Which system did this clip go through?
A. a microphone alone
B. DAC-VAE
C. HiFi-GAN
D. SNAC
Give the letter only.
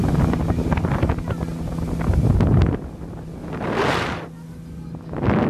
A